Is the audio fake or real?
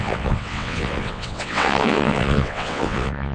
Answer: fake